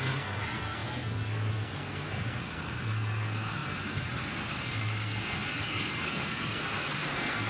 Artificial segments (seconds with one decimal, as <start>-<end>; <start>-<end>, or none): 0.0-7.5